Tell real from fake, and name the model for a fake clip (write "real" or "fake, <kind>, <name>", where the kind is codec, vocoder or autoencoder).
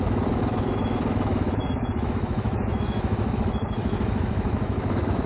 fake, autoencoder, DAC-VAE